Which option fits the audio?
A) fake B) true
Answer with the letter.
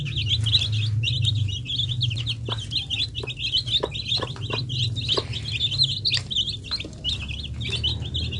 B